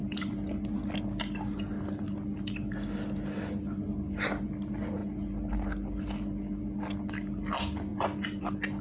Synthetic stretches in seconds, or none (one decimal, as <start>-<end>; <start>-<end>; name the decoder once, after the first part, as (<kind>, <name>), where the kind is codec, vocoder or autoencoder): none